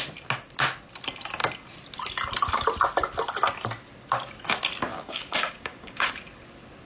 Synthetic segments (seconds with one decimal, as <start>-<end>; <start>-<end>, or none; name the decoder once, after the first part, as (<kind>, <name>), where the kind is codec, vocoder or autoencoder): 4.9-6.1 (codec, DAC)